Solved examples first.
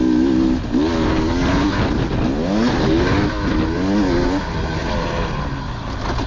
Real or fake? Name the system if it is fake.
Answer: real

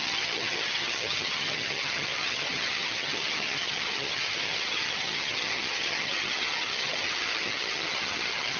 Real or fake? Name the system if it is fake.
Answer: fake, vocoder, HiFi-GAN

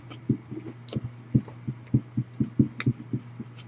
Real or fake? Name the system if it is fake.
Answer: real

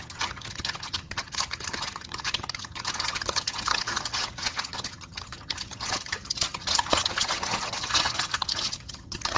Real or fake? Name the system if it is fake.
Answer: fake, vocoder, HiFi-GAN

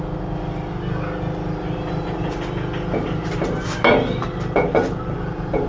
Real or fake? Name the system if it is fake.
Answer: real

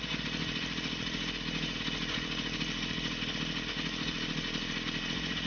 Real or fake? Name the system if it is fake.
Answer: real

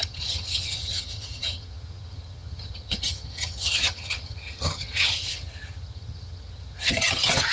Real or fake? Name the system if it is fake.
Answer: fake, vocoder, HiFi-GAN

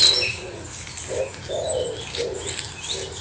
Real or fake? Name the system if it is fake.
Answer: real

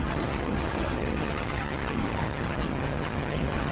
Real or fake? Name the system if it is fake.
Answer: fake, vocoder, HiFi-GAN